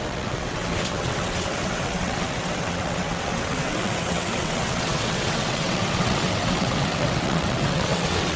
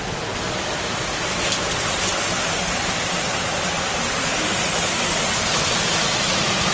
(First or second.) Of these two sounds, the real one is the second